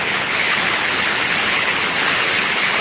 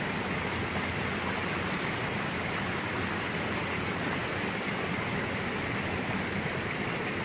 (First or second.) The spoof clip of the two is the first